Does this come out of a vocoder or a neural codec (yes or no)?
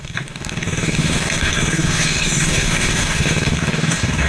yes